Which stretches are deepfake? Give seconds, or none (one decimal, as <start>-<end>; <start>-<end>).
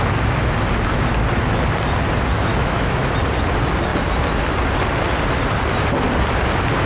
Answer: 2.5-3.1